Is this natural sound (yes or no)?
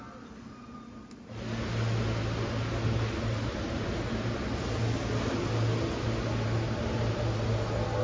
yes